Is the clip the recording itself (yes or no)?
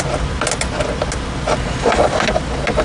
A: yes